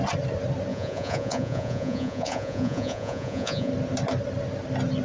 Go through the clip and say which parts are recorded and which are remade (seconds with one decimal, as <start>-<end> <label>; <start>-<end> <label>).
0.0-0.7 recorded; 0.7-3.7 remade; 3.7-5.0 recorded